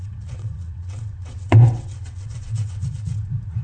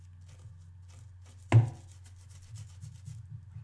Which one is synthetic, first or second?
first